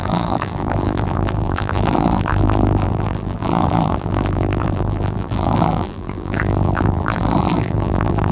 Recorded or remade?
remade